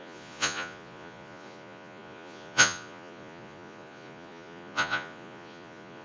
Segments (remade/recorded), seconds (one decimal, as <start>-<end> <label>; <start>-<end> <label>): 0.0-6.0 remade